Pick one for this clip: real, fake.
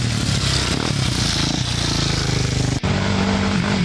real